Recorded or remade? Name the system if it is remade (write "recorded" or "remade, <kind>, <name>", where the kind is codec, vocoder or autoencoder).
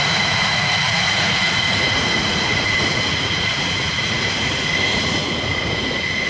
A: remade, vocoder, Vocos